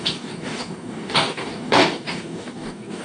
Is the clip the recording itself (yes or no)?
no